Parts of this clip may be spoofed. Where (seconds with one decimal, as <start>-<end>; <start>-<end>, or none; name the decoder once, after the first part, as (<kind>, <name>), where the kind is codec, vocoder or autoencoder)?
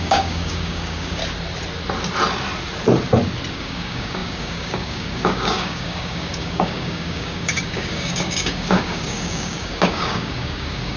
0.0-1.2 (codec, DAC); 3.5-11.0